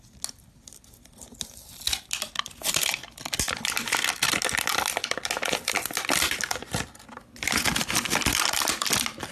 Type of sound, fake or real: real